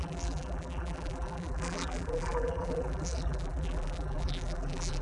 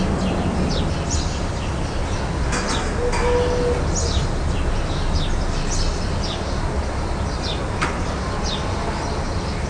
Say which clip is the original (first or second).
second